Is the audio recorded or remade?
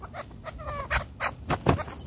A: recorded